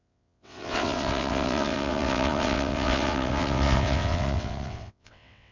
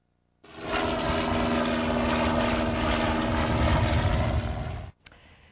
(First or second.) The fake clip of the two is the first